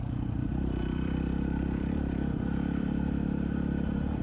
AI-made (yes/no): yes